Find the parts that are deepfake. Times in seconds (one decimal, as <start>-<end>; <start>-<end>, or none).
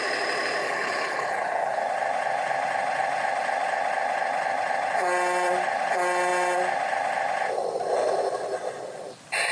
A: 0.6-1.4